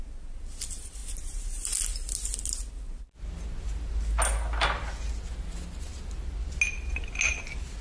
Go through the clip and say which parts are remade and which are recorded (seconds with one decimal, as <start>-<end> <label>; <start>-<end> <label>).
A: 0.0-7.8 recorded